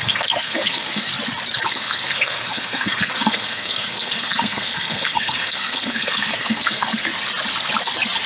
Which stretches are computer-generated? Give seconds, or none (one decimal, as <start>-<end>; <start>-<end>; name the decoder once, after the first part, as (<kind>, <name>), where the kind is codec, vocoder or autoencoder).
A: 0.0-1.1 (codec, SNAC); 1.7-7.1